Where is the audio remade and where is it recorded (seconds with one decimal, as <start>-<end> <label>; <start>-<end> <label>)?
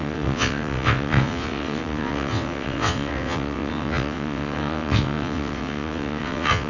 0.0-6.7 remade